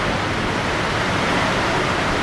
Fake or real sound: real